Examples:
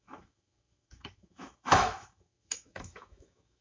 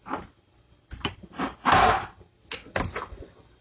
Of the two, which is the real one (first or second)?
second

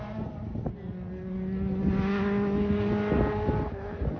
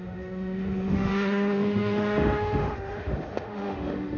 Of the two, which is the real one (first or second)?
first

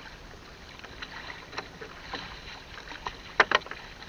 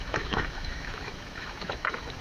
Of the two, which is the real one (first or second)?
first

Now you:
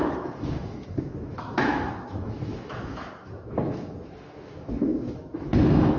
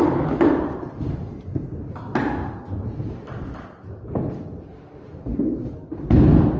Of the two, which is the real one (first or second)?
second